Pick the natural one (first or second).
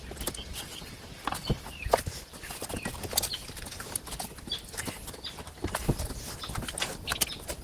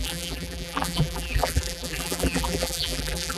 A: first